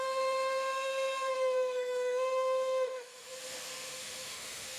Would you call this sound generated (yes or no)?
yes